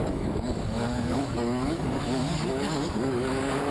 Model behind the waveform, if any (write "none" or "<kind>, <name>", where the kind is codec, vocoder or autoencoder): codec, DAC